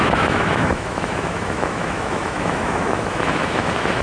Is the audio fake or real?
fake